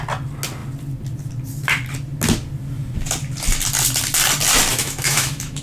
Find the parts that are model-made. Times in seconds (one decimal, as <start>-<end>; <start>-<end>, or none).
4.7-5.6